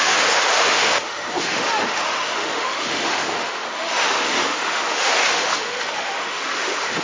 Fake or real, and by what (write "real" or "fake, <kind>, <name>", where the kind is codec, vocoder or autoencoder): fake, autoencoder, DAC-VAE